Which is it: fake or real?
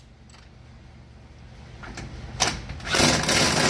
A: real